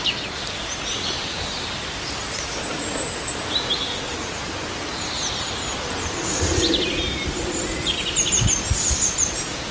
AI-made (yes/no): no